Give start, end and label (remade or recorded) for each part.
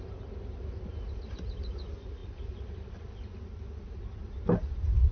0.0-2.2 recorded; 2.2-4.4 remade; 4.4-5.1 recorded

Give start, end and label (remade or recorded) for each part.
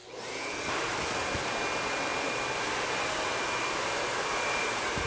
0.0-1.0 remade; 1.0-2.1 recorded; 2.1-4.6 remade; 4.6-5.1 recorded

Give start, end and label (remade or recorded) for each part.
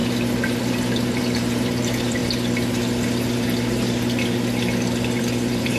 0.0-0.6 recorded; 0.6-2.2 remade; 2.2-5.2 recorded; 5.2-5.8 remade